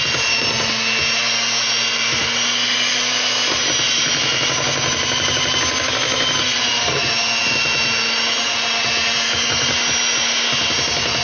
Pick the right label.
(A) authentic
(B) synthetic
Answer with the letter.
A